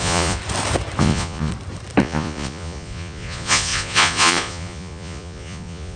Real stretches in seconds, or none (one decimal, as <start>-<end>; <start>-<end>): 0.4-1.0; 1.5-2.0